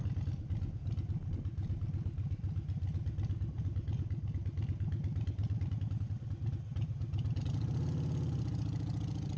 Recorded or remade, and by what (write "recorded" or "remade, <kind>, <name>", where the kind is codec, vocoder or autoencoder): recorded